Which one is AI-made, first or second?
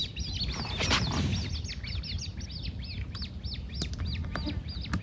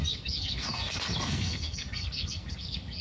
second